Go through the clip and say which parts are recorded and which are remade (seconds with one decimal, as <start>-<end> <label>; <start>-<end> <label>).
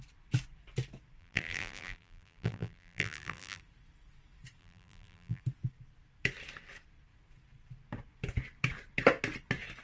0.0-1.2 recorded; 1.2-3.6 remade; 3.6-4.6 recorded; 4.6-5.4 remade; 5.4-9.8 recorded